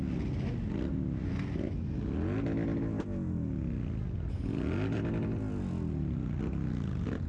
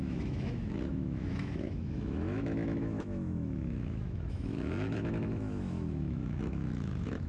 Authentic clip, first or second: first